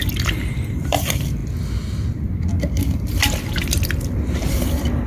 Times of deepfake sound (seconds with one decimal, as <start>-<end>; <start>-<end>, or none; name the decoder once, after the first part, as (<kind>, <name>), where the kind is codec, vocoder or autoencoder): none